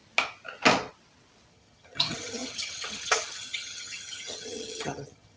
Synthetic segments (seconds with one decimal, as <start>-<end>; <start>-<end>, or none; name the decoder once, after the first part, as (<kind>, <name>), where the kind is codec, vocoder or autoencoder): 1.5-5.4 (vocoder, HiFi-GAN)